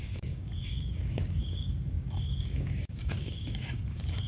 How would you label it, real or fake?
fake